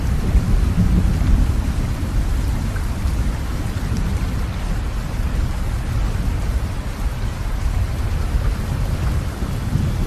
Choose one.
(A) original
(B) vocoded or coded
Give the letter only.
A